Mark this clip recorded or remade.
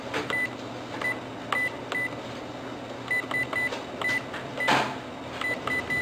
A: recorded